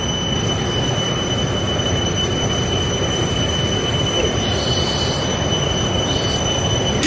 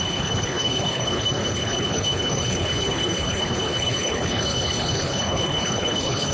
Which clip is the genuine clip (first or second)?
first